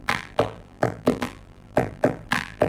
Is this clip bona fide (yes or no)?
no